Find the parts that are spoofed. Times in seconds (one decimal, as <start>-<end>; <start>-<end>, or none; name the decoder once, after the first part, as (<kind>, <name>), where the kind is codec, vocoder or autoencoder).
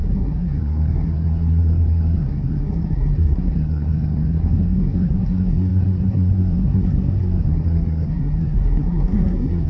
0.0-9.7 (codec, SNAC)